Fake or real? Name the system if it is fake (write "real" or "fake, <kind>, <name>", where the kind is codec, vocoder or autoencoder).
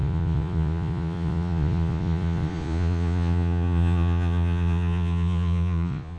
fake, vocoder, Vocos